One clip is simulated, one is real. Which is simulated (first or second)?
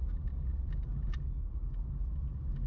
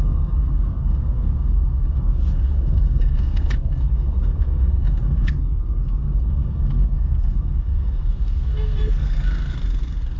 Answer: second